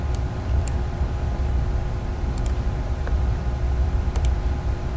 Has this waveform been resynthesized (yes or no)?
yes